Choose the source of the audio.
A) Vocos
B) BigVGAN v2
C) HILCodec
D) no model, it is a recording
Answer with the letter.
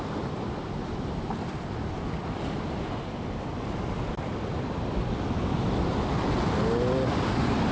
D